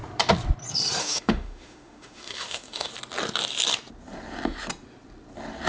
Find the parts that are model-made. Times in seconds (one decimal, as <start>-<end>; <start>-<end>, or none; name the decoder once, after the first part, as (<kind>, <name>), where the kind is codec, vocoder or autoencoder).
1.0-2.9 (autoencoder, DAC-VAE)